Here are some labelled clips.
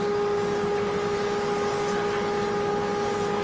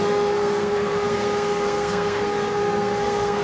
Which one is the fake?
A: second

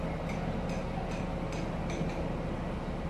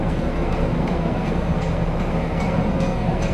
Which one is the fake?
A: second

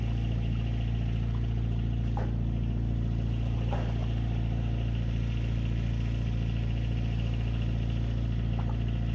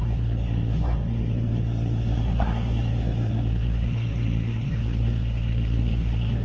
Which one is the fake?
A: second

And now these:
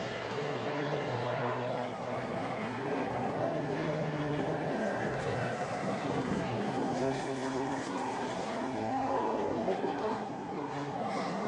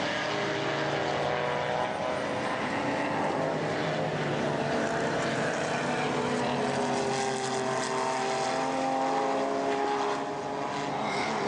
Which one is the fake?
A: first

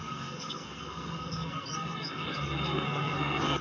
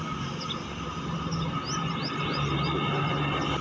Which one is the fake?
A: first